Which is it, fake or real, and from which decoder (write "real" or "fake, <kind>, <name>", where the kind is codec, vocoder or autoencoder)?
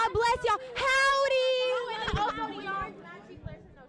real